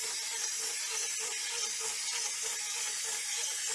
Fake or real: real